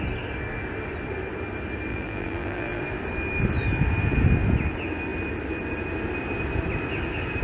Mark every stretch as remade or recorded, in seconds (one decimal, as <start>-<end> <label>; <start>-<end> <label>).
0.0-1.9 recorded; 1.9-2.8 remade; 2.8-7.4 recorded